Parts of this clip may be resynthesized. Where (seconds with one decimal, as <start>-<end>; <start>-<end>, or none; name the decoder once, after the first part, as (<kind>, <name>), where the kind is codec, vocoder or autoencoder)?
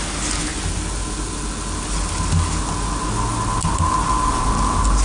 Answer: none